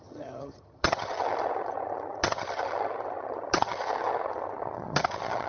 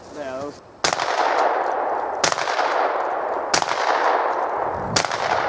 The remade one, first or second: first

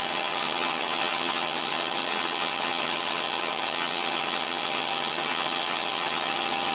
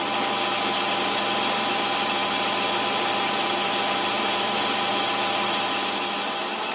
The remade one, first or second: first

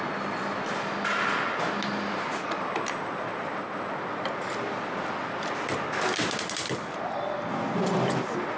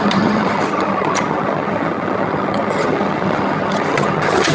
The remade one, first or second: second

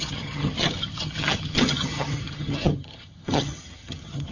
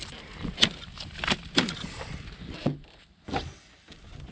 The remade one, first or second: first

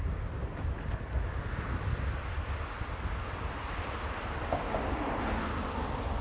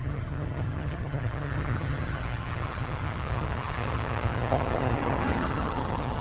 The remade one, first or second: second